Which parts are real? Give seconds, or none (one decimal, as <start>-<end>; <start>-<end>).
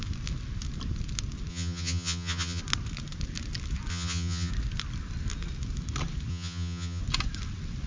0.0-1.5; 2.6-3.9; 4.5-6.3; 7.0-7.9